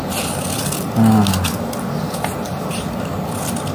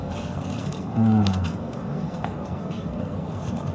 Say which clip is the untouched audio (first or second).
first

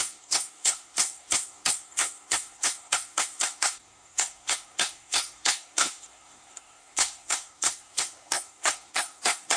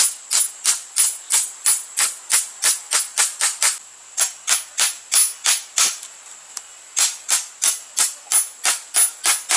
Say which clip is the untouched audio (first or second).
second